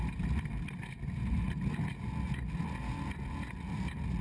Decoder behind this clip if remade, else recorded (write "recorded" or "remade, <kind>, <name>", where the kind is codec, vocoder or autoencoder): recorded